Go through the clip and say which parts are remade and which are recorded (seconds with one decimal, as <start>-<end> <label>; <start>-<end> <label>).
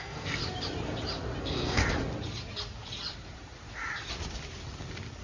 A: 0.0-0.4 remade; 0.4-1.4 recorded; 1.4-1.8 remade; 1.8-5.2 recorded